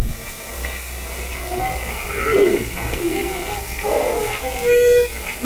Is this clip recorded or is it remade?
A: remade